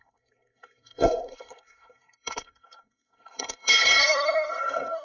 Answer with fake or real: fake